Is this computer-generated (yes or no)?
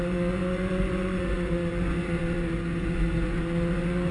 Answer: yes